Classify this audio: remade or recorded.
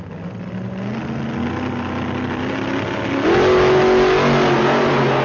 recorded